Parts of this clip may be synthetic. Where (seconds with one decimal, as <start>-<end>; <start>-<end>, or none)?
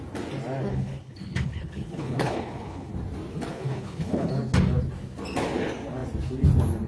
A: 0.7-2.9; 3.5-4.3